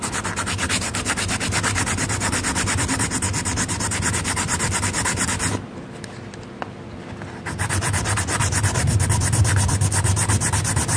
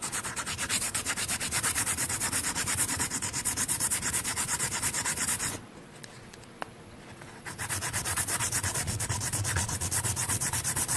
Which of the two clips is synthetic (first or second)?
second